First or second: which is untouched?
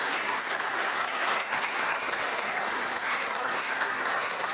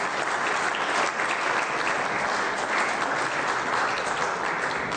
second